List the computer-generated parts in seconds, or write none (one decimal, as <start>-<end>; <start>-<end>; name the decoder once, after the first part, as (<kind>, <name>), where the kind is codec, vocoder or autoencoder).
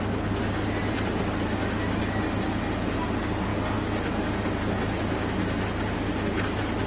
none